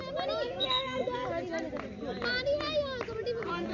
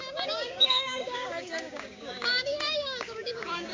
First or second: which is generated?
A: second